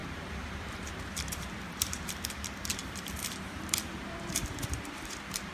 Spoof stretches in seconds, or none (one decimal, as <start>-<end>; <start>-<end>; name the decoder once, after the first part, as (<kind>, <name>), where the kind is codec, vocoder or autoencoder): 0.0-2.0 (vocoder, BigVGAN v2); 2.8-5.5